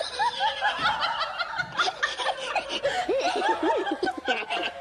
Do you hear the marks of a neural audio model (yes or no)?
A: no